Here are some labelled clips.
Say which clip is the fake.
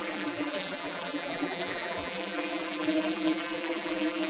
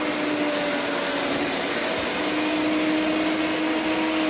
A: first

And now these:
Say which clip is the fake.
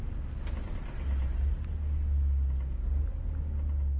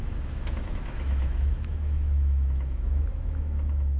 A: second